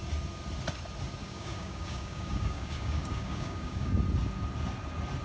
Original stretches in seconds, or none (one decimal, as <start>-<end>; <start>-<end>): 0.0-1.2; 3.9-5.2